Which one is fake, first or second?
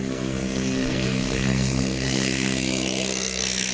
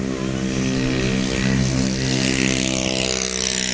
first